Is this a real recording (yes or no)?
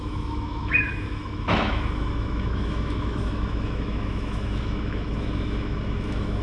no